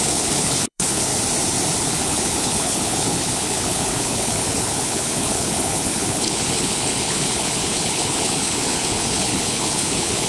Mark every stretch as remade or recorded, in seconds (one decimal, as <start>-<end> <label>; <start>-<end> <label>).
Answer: 0.0-1.1 remade; 1.1-1.8 recorded; 1.8-10.3 remade